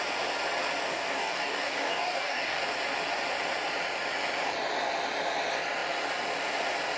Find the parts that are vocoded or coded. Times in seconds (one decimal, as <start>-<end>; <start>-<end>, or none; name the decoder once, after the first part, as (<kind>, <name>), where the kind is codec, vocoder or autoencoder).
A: 0.9-2.6 (codec, DAC)